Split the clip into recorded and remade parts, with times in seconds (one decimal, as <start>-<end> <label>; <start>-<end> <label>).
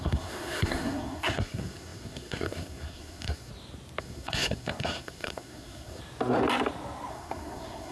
0.0-3.5 remade; 3.5-4.0 recorded; 4.0-6.0 remade; 6.0-7.1 recorded; 7.1-7.9 remade